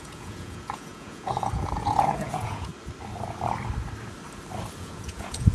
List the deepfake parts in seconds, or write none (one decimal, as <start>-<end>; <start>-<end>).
0.0-2.7; 4.8-5.5